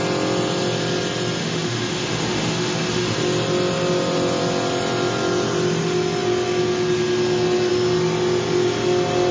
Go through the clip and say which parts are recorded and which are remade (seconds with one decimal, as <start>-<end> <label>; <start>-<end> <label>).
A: 0.0-1.4 recorded; 1.4-3.2 remade; 3.2-9.3 recorded